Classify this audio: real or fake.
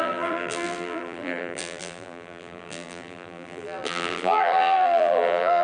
fake